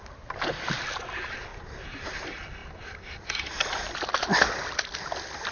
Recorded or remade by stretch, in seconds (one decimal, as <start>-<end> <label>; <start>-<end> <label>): 0.0-5.5 recorded